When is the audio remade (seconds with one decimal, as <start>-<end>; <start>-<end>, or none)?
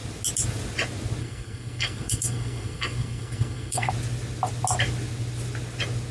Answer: 1.2-3.9